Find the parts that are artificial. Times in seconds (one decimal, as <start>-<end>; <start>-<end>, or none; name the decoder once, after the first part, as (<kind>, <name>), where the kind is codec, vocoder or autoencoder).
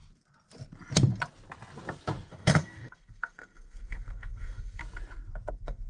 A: 2.3-4.8 (codec, SNAC); 5.5-5.9